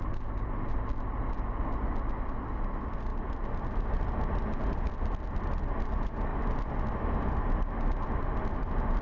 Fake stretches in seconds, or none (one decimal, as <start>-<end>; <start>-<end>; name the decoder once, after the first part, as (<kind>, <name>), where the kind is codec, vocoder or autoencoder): none